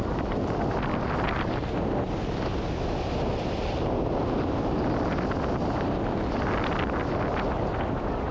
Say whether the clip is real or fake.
real